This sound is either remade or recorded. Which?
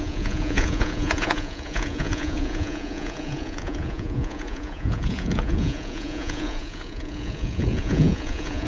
remade